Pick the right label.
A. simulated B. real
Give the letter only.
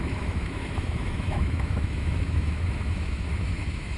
A